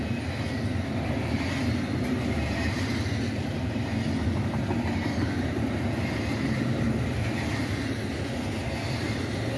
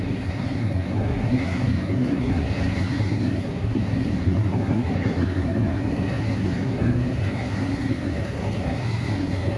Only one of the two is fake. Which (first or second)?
second